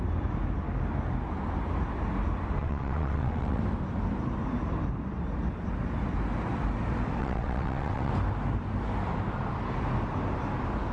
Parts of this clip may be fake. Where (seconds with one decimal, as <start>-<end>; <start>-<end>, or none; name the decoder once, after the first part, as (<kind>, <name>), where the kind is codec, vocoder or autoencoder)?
2.6-3.6 (vocoder, WaveNeXt); 7.2-8.1